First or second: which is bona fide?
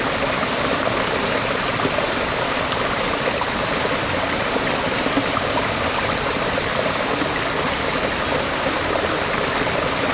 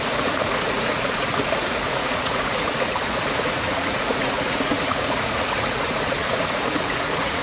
first